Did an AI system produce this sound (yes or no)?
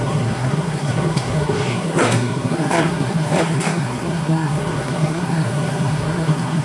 yes